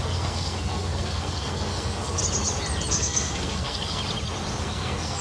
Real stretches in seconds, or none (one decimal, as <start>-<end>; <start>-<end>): 2.2-2.9; 4.0-4.6